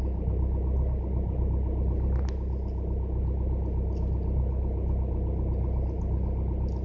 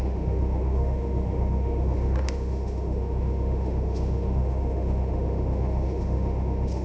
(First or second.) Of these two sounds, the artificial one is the second